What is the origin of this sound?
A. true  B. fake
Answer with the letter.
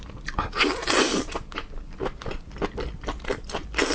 A